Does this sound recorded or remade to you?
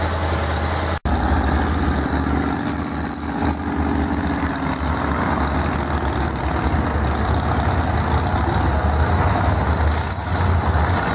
recorded